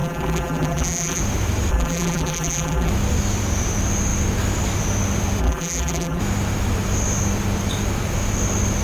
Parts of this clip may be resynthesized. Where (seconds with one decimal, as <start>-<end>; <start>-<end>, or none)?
0.0-1.2; 1.7-2.9; 5.4-6.2